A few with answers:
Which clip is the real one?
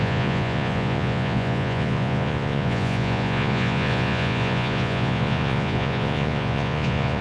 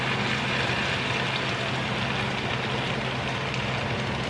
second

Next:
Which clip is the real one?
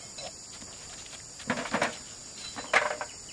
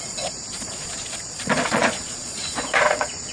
first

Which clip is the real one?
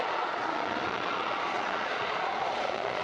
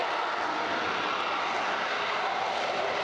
second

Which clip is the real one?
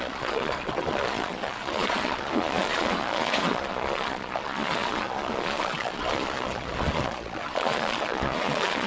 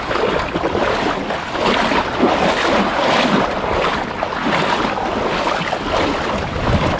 second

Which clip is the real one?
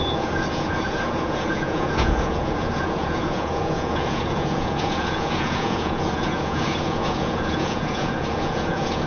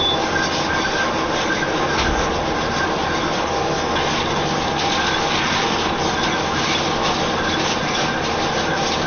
second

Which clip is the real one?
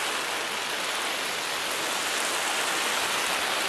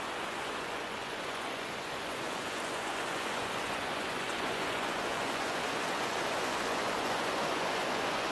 first